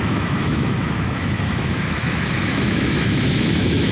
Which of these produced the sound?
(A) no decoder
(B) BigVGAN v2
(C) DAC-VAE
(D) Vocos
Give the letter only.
C